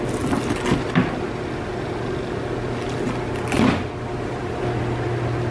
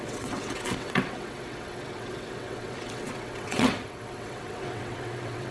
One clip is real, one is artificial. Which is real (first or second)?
first